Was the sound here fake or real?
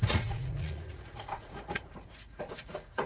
fake